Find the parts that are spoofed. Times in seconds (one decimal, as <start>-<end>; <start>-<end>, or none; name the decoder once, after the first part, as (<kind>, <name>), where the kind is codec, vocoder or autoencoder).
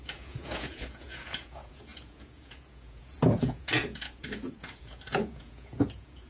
0.0-6.3 (vocoder, Vocos)